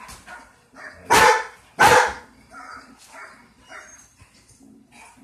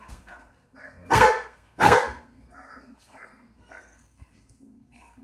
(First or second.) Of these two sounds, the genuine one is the first